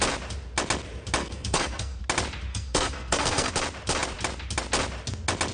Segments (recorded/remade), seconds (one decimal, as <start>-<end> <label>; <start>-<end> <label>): 0.0-1.2 recorded; 1.2-2.0 remade; 2.0-2.5 recorded; 2.5-3.5 remade; 3.5-5.5 recorded